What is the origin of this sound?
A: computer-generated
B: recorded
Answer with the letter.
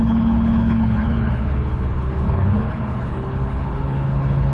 A